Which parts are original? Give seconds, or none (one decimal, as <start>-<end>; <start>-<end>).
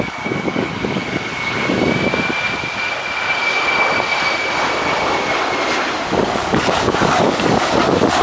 1.3-6.2